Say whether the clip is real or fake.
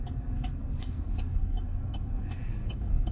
fake